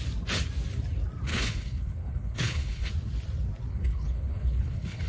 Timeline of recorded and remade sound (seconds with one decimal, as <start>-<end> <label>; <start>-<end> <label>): 0.0-1.3 recorded; 1.3-2.9 remade; 2.9-3.7 recorded; 3.7-5.1 remade